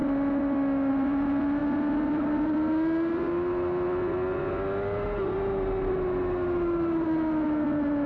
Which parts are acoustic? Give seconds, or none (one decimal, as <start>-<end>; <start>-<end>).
0.0-8.1